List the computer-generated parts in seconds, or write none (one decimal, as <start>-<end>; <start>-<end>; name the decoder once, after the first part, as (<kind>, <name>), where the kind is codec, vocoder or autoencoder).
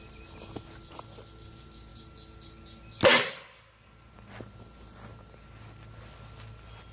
none